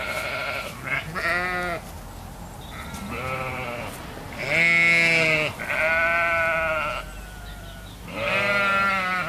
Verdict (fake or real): real